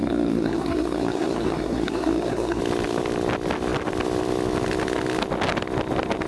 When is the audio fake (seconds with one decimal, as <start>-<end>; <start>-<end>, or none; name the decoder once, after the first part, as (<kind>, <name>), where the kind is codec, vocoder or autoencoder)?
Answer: 0.0-2.6 (codec, SNAC)